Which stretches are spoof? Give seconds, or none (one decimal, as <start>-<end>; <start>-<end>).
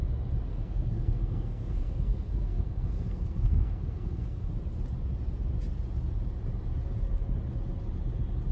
0.5-4.5